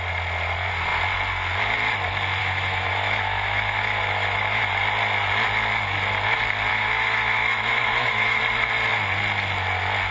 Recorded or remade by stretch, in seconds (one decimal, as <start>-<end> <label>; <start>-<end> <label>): 0.0-2.4 recorded; 2.4-4.7 remade; 4.7-6.7 recorded; 6.7-8.4 remade; 8.4-10.1 recorded